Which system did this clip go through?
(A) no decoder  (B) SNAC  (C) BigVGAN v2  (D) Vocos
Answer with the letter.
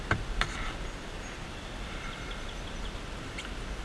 A